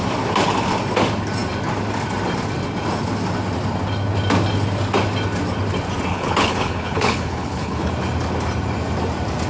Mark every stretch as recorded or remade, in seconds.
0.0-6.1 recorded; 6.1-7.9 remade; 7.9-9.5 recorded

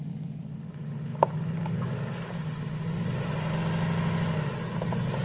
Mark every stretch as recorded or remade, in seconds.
0.0-5.2 recorded

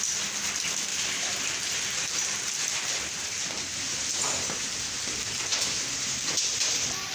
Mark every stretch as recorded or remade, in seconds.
0.0-0.9 recorded; 0.9-4.1 remade; 4.1-7.1 recorded

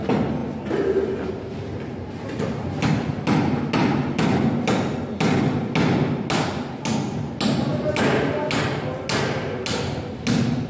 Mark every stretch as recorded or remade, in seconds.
0.0-10.7 recorded

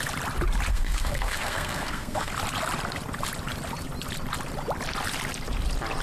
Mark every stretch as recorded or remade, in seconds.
0.0-0.7 recorded; 0.7-2.3 remade; 2.3-6.0 recorded

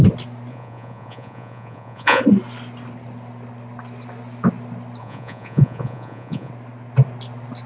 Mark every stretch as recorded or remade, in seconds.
0.0-0.5 recorded; 0.5-2.2 remade; 2.2-5.0 recorded; 5.0-6.5 remade; 6.5-7.7 recorded

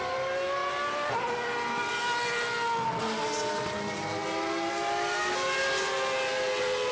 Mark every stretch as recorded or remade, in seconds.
0.0-6.9 recorded